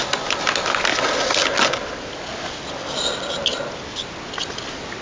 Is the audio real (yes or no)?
yes